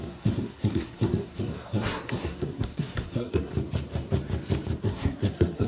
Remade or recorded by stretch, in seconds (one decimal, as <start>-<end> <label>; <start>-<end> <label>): 0.0-3.5 remade; 3.5-4.8 recorded; 4.8-5.7 remade